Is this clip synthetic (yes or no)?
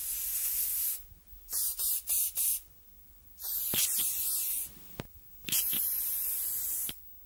no